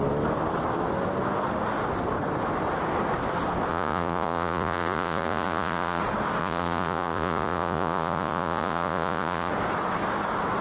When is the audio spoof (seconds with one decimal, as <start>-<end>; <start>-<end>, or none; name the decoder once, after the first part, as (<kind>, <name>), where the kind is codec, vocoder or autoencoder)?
3.7-6.0 (vocoder, Vocos); 6.4-9.5